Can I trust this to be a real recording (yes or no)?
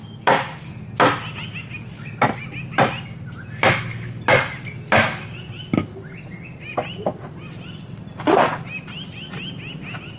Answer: yes